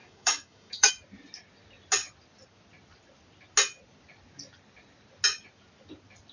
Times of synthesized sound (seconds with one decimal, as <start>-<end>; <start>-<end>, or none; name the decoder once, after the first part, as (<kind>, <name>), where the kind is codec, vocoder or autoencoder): 0.0-0.9 (autoencoder, DAC-VAE)